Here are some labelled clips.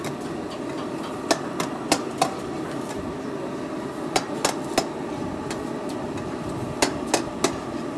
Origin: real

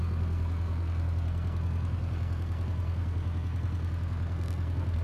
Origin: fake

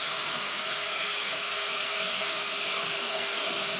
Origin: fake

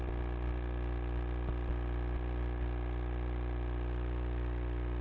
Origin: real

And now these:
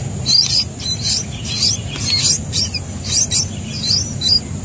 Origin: real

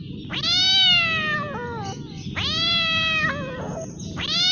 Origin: real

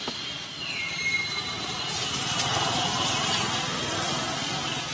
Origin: real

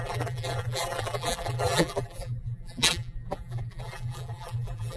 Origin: fake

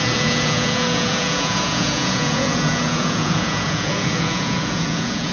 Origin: fake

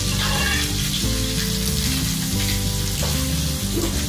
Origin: real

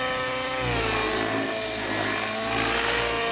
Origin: real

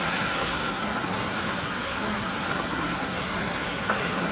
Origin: fake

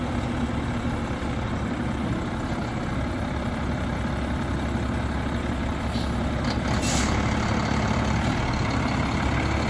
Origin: real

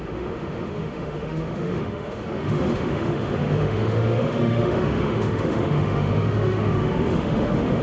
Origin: fake